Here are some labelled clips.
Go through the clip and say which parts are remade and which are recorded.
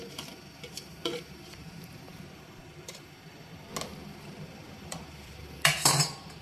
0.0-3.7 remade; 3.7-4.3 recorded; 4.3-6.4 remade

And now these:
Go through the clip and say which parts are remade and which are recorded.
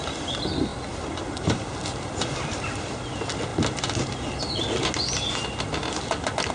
0.0-0.7 remade; 0.7-1.3 recorded; 1.3-3.5 remade; 3.5-6.5 recorded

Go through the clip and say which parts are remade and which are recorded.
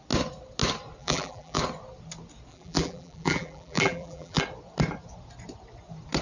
0.0-1.0 recorded; 1.0-1.6 remade; 1.6-2.5 recorded; 2.5-4.4 remade; 4.4-6.2 recorded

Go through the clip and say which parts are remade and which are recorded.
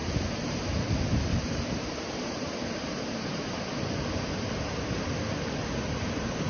0.0-2.9 remade; 2.9-6.5 recorded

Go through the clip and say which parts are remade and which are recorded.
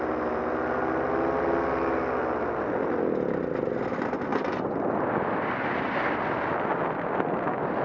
0.0-7.8 recorded